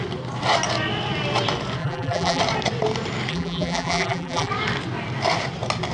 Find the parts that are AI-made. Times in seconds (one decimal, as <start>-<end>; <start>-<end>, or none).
1.8-2.4; 3.3-4.5